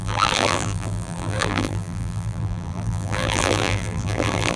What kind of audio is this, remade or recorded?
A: remade